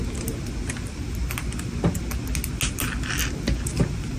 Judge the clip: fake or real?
real